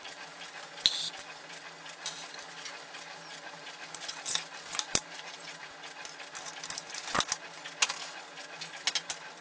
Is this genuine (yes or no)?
yes